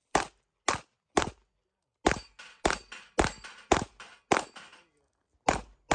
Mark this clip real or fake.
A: real